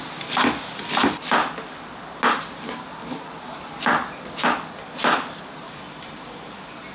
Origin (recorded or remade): recorded